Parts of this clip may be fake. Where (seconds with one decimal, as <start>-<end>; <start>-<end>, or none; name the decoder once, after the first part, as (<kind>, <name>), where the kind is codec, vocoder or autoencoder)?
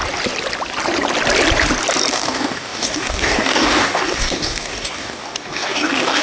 2.1-6.2 (codec, DAC)